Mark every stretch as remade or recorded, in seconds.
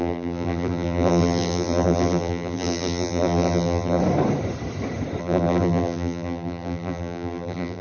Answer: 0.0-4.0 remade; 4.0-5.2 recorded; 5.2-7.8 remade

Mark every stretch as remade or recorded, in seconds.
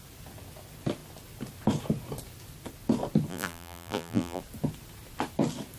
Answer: 0.0-3.3 recorded; 3.3-4.4 remade; 4.4-5.8 recorded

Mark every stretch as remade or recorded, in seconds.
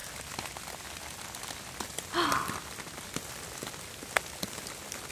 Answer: 0.0-5.1 recorded